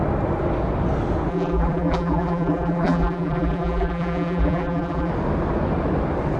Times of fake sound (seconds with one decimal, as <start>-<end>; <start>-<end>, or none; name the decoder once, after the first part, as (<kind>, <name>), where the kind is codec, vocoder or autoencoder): 1.3-5.1 (vocoder, BigVGAN v2)